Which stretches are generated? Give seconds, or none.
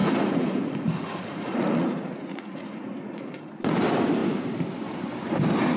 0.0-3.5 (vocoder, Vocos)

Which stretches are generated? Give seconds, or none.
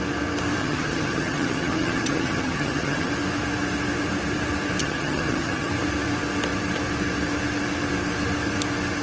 0.6-3.1 (vocoder, HiFi-GAN); 4.8-5.7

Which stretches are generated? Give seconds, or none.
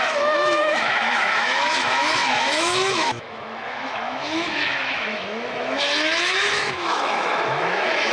0.0-8.1 (autoencoder, DAC-VAE)